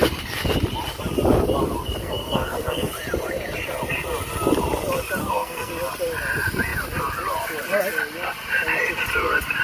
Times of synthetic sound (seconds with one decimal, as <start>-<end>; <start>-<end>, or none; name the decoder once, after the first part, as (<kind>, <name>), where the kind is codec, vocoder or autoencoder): 2.0-2.9 (codec, SNAC); 5.2-5.7